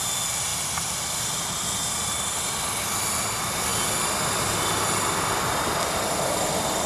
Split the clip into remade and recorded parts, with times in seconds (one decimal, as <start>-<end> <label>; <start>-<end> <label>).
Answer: 0.0-0.5 recorded; 0.5-1.9 remade; 1.9-6.9 recorded